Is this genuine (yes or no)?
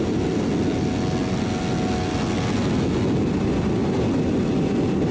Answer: yes